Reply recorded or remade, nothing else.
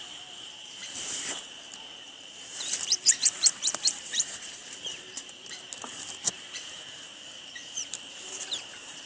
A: remade